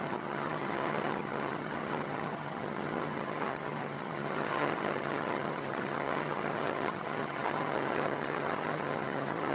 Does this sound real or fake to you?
fake